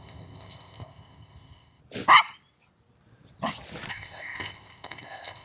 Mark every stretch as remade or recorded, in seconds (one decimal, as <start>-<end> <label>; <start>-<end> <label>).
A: 0.0-1.8 remade; 1.8-3.9 recorded; 3.9-5.4 remade